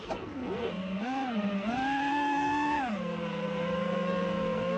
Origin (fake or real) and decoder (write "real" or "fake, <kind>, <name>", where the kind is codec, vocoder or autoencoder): fake, codec, SNAC